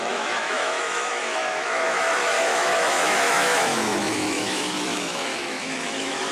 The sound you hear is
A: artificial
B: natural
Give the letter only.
A